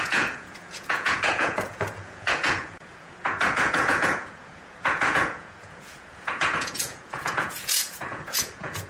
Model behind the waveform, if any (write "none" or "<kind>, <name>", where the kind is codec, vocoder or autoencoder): vocoder, Vocos